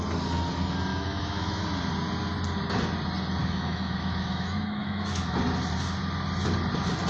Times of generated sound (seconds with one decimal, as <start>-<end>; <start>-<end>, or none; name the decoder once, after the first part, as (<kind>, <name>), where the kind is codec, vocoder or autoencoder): 0.9-1.6 (autoencoder, DAC-VAE); 3.4-5.4